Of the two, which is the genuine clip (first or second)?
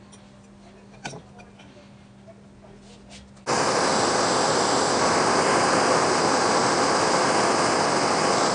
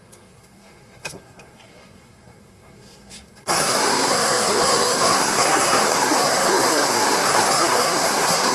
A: first